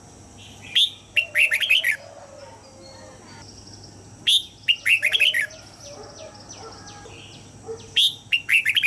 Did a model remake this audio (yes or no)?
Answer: no